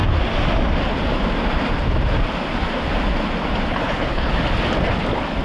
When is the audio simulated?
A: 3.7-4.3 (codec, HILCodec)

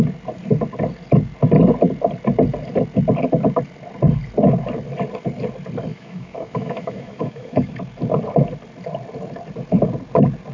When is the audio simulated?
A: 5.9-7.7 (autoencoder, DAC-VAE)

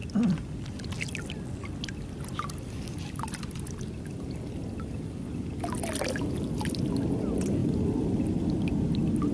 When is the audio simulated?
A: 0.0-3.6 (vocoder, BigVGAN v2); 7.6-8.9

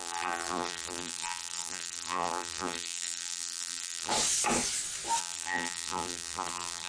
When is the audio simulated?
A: 0.0-4.1 (vocoder, BigVGAN v2); 5.2-6.9